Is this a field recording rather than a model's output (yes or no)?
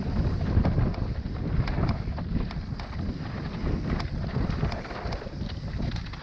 yes